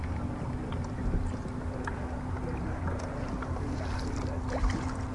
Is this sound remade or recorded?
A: recorded